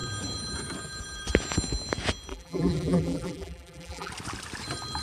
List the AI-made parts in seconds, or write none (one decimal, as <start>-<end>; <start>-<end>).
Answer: 2.3-4.1